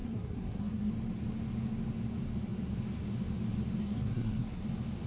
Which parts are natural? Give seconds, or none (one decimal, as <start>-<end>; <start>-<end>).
0.9-3.8; 4.6-5.1